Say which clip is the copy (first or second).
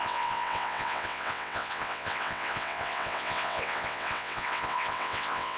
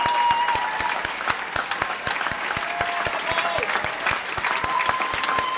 first